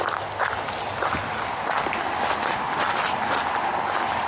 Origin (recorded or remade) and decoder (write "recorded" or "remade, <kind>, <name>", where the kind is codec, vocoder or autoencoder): recorded